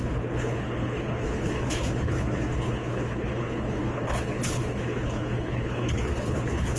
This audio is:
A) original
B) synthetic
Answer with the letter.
B